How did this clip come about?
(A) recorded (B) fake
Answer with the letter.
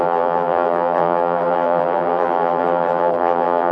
B